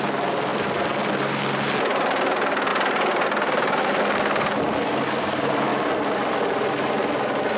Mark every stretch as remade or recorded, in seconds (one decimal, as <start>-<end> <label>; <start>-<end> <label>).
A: 0.0-7.6 recorded